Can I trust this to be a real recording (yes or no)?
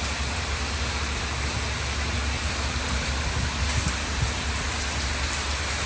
yes